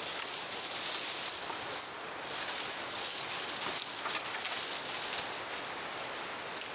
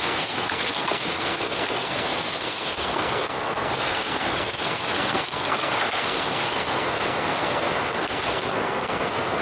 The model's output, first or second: second